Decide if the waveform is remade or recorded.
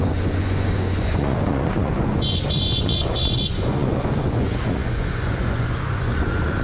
remade